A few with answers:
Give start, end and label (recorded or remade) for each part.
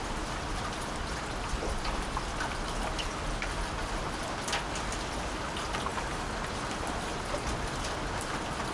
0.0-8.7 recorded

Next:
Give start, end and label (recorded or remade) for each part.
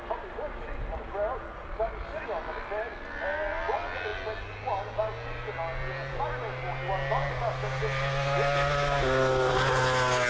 0.0-10.3 recorded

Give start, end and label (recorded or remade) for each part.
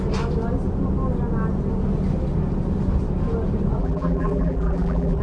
0.0-3.8 recorded; 3.8-5.2 remade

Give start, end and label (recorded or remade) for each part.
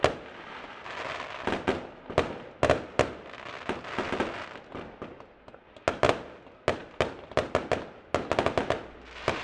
0.0-9.4 recorded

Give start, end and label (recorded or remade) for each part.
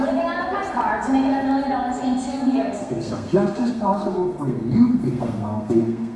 0.0-2.3 recorded; 2.3-6.2 remade